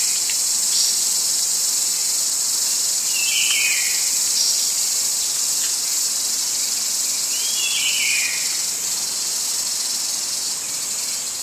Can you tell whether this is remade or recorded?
recorded